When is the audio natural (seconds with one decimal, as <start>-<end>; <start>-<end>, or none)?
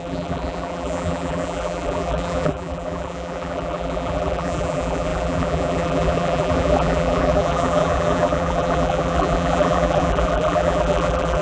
none